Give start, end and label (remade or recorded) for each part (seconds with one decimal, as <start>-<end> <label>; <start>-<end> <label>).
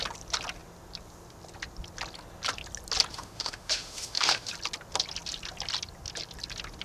0.0-3.1 recorded; 3.1-4.5 remade; 4.5-6.8 recorded